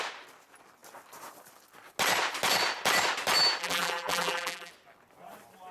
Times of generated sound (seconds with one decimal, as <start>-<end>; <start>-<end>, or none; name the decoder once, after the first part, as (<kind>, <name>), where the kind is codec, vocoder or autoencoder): 3.6-4.7 (vocoder, BigVGAN v2)